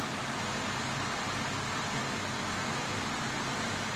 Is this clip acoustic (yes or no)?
yes